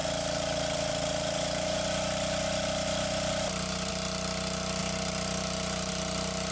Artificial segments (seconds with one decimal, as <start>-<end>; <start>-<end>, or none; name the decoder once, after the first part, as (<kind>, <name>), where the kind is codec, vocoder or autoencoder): 0.0-3.9 (vocoder, BigVGAN v2); 4.8-5.9